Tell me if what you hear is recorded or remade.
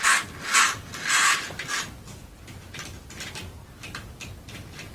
recorded